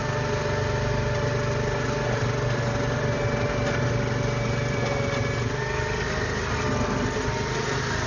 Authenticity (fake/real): real